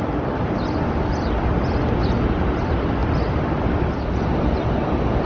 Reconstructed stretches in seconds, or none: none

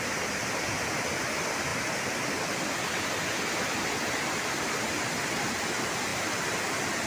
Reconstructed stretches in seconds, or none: none

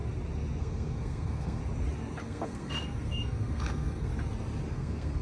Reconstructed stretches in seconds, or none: 0.6-1.6; 2.2-4.1; 4.7-5.2

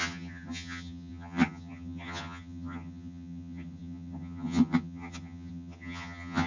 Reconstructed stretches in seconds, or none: 0.0-6.5

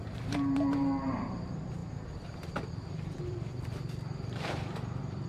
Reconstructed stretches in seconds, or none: 0.0-5.3

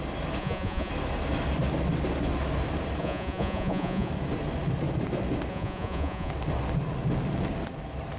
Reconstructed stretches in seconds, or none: 0.4-0.9; 3.0-4.1; 5.5-6.3